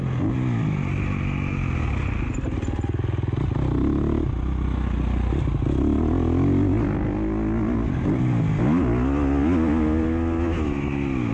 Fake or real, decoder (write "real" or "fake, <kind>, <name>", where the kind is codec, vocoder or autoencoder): real